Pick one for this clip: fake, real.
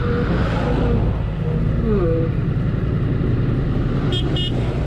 real